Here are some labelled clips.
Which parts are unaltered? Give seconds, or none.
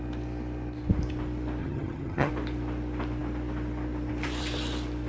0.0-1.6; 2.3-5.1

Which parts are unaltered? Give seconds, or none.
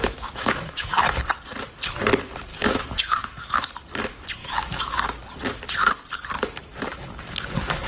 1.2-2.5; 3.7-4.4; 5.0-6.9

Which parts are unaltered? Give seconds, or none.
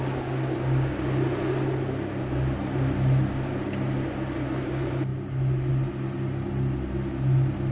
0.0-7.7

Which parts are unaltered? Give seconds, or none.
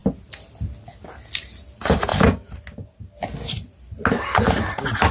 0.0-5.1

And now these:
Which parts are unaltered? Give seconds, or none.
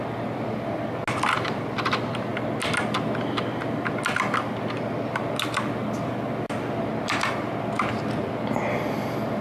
0.0-9.4